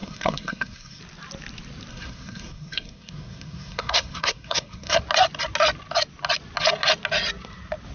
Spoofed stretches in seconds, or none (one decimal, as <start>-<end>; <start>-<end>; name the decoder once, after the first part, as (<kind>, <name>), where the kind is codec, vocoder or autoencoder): 0.0-1.0 (codec, SNAC); 1.9-5.0